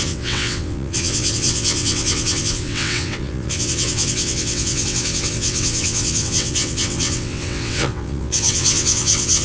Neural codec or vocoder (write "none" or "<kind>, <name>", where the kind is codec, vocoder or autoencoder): vocoder, WaveNeXt